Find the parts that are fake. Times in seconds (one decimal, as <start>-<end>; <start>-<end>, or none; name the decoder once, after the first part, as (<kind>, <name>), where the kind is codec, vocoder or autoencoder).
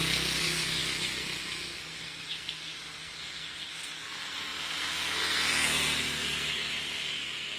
0.0-7.6 (codec, SNAC)